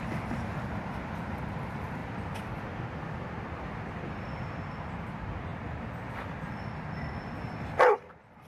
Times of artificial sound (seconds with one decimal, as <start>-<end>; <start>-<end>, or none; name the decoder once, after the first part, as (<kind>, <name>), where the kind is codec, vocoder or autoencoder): none